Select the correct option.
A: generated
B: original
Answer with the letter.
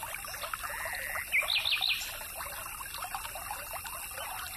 B